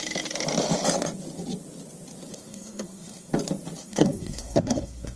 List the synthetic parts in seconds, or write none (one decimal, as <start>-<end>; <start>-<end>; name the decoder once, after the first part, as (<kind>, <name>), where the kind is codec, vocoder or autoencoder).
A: 2.3-3.3 (codec, SNAC); 3.8-5.2